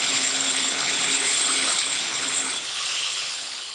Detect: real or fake fake